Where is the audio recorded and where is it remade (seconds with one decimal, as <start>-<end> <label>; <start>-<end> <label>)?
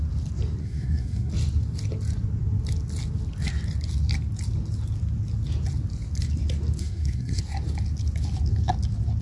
0.0-0.6 recorded; 0.6-1.3 remade; 1.3-6.8 recorded; 6.8-7.4 remade; 7.4-9.2 recorded